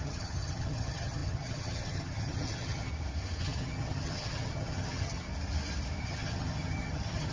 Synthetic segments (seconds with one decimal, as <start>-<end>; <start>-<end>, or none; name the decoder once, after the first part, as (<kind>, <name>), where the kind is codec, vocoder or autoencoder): 0.0-2.9 (vocoder, HiFi-GAN); 3.4-5.3; 6.0-7.3